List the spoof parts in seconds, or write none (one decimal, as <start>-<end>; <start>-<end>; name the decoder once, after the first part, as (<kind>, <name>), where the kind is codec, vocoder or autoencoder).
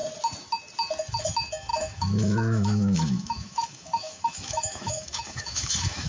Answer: 1.2-6.1 (autoencoder, DAC-VAE)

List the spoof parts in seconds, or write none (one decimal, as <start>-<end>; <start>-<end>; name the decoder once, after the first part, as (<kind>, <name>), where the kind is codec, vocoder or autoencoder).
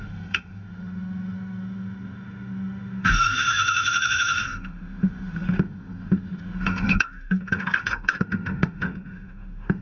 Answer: 0.0-9.8 (autoencoder, DAC-VAE)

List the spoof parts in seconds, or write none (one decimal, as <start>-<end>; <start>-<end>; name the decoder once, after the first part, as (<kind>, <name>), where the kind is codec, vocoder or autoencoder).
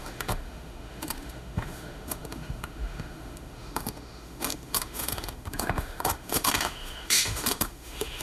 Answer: 0.0-8.2 (autoencoder, DAC-VAE)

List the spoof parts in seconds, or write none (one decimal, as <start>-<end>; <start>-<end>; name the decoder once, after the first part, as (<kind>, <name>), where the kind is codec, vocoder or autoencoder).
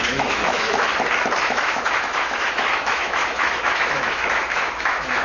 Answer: 0.0-0.9 (autoencoder, DAC-VAE); 1.4-5.2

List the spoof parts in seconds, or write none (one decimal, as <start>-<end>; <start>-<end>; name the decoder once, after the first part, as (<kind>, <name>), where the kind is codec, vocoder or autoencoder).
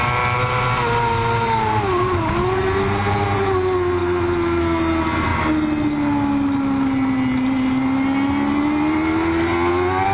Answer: none